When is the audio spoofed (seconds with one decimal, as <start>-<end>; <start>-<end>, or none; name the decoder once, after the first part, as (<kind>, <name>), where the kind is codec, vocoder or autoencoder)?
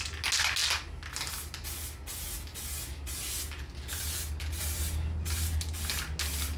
none